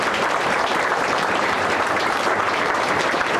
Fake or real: fake